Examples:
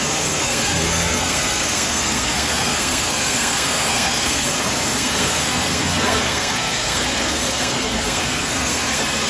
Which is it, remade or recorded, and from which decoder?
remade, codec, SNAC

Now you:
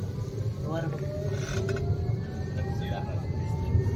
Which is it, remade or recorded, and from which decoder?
recorded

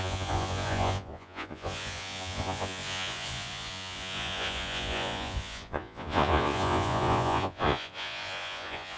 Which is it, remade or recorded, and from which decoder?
remade, vocoder, Vocos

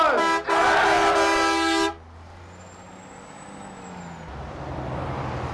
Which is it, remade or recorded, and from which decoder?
recorded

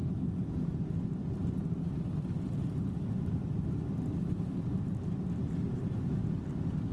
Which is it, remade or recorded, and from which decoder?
recorded